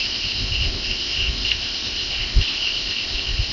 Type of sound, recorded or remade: remade